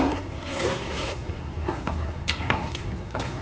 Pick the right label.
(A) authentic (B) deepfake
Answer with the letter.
B